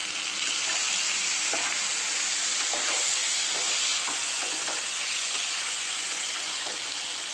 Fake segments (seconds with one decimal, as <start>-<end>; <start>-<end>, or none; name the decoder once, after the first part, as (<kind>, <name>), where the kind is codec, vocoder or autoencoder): 3.9-6.7 (vocoder, Vocos)